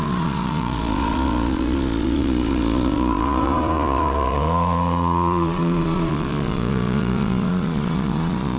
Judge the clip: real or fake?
fake